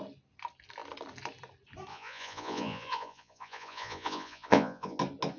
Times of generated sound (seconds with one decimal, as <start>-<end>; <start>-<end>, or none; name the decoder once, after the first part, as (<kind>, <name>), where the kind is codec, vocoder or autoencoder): 1.9-5.0 (vocoder, Vocos)